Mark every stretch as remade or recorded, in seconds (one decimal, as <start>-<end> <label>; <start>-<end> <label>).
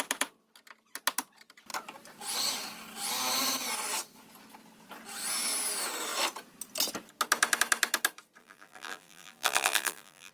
0.0-8.4 recorded; 8.4-10.3 remade